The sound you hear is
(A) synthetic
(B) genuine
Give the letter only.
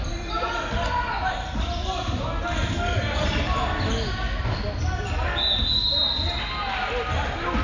B